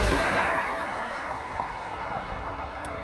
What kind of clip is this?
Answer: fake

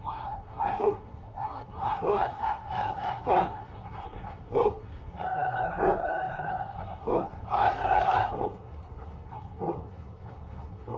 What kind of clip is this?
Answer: fake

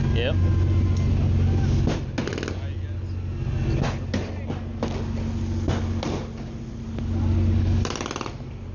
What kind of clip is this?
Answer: real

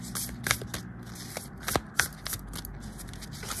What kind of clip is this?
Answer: real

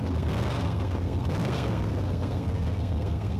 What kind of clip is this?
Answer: fake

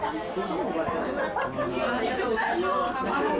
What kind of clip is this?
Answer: real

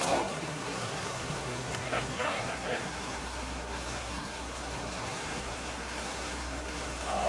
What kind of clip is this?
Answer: fake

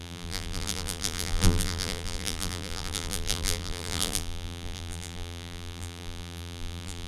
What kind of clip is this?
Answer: fake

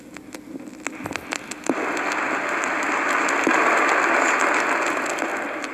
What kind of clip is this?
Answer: real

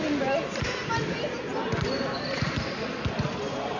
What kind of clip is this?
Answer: real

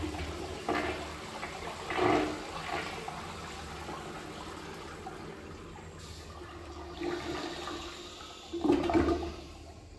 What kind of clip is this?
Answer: real